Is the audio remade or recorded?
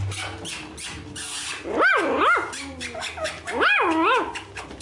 recorded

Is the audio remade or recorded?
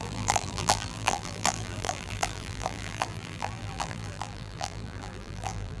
remade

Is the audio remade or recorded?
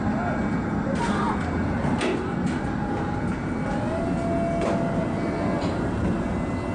recorded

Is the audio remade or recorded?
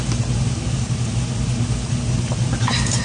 recorded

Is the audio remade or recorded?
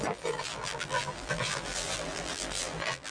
remade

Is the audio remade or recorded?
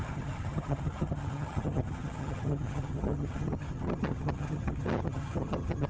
remade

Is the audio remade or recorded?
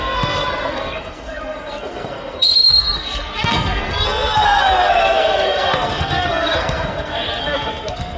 remade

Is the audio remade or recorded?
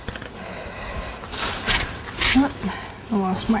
recorded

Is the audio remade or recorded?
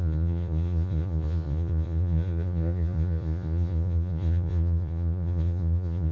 remade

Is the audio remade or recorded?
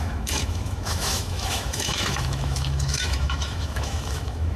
remade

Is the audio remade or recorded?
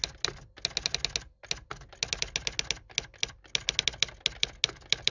recorded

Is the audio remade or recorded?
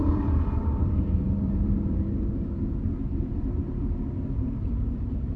remade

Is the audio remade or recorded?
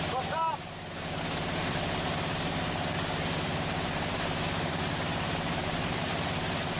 remade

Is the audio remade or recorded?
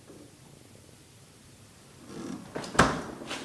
remade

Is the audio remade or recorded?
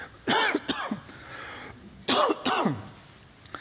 recorded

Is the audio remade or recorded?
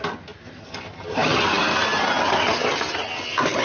recorded